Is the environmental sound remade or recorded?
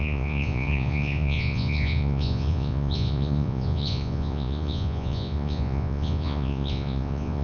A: remade